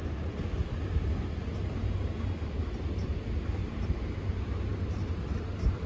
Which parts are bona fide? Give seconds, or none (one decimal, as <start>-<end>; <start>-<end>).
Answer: 0.0-5.9